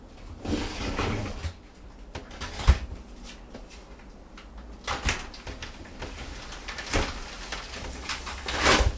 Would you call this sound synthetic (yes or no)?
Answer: no